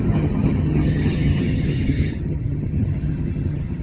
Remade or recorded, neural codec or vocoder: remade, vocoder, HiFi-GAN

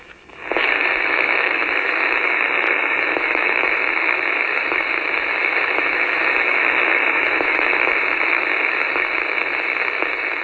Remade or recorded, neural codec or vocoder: remade, autoencoder, DAC-VAE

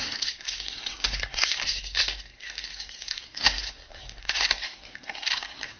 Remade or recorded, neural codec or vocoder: remade, codec, SNAC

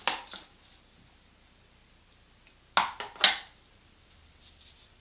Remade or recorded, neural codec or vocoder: recorded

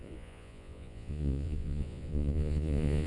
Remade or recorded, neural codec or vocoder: remade, vocoder, Vocos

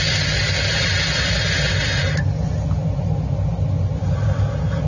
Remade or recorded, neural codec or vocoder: recorded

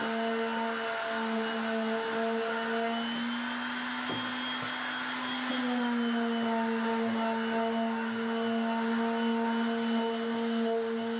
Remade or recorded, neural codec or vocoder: recorded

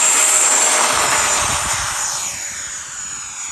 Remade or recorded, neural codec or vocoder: recorded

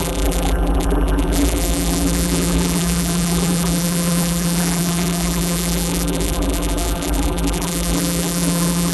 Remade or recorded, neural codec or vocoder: remade, vocoder, BigVGAN v2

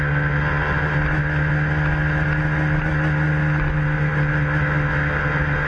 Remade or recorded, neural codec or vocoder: recorded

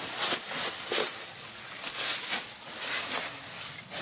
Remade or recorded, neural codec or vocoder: recorded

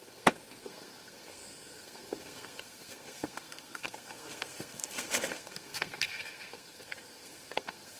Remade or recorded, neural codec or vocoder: remade, codec, SNAC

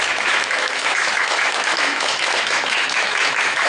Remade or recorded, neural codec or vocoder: remade, autoencoder, DAC-VAE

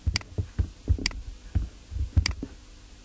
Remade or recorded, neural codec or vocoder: recorded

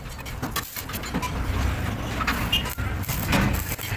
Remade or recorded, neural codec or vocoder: recorded